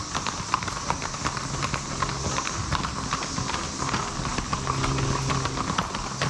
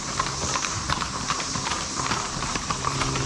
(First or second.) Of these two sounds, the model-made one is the second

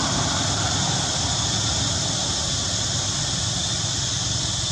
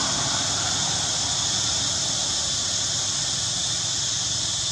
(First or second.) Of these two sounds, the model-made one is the first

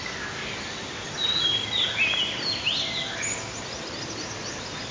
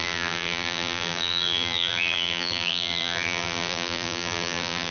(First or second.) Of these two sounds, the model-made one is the second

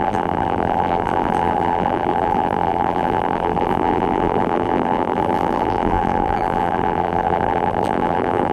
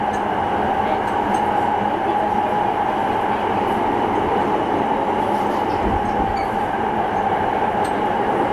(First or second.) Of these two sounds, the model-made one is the first